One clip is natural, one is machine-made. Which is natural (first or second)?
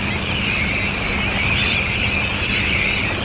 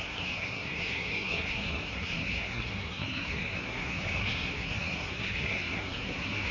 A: first